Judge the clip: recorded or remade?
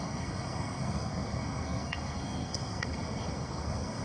remade